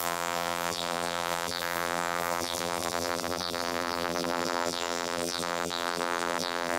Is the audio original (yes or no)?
no